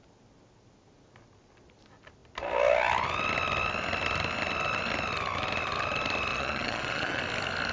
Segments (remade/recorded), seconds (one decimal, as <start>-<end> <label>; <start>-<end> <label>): 0.0-6.3 recorded; 6.3-7.2 remade; 7.2-7.7 recorded